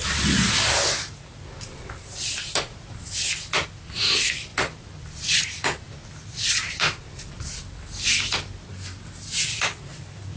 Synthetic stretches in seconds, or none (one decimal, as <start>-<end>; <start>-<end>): none